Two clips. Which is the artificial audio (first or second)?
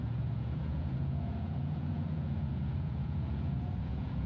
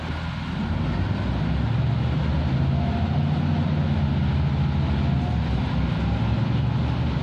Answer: first